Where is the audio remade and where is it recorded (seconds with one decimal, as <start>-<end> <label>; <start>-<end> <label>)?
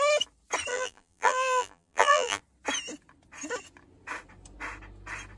0.0-0.7 recorded; 0.7-2.4 remade; 2.4-5.4 recorded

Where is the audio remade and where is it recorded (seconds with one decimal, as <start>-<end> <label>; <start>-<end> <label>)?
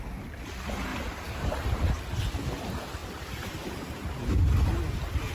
0.0-5.3 recorded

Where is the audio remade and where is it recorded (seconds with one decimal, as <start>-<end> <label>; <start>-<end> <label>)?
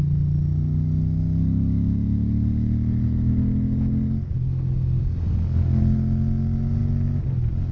0.0-7.7 recorded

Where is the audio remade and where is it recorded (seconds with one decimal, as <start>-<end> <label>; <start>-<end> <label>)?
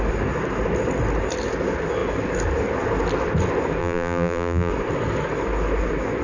0.0-3.8 recorded; 3.8-4.7 remade; 4.7-6.2 recorded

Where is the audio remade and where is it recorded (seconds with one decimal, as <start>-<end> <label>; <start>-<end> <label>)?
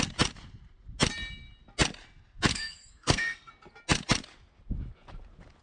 0.0-2.5 recorded; 2.5-3.5 remade; 3.5-5.6 recorded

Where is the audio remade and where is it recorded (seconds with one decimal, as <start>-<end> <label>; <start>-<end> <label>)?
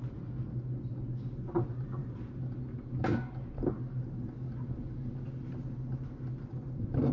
0.0-7.1 recorded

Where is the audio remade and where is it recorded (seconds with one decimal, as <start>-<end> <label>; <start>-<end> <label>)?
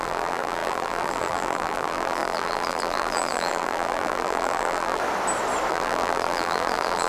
0.0-5.0 remade; 5.0-5.7 recorded; 5.7-7.1 remade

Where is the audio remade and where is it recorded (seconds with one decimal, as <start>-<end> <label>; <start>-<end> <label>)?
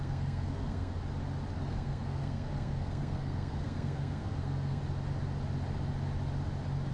0.0-0.9 remade; 0.9-1.6 recorded; 1.6-4.8 remade; 4.8-6.9 recorded